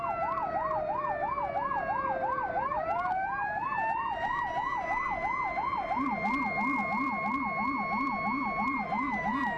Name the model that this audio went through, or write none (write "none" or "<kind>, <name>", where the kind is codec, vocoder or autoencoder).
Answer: none